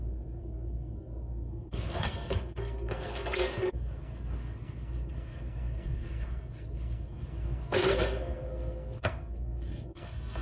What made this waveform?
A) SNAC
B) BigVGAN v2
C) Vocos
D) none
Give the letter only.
A